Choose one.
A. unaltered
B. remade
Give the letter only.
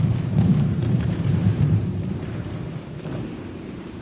B